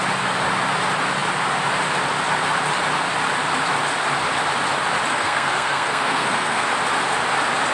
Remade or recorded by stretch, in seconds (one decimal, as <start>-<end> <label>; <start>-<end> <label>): 0.0-5.1 recorded; 5.1-6.7 remade; 6.7-7.7 recorded